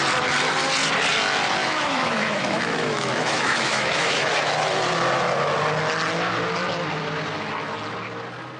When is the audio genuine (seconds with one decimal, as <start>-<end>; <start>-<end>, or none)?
0.0-1.6; 4.3-8.6

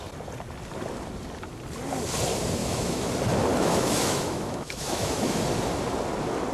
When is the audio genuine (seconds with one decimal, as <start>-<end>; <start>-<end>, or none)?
0.0-2.6; 3.1-3.5; 5.4-6.5